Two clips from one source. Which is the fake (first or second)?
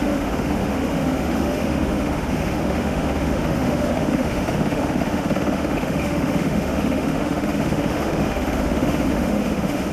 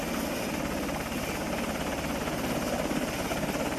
first